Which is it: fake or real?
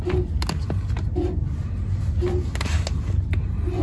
real